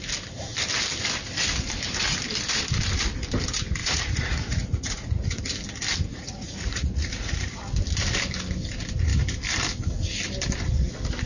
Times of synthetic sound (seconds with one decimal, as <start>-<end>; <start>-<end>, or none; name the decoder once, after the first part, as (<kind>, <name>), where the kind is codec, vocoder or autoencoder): 3.8-5.4 (vocoder, Vocos); 6.1-7.6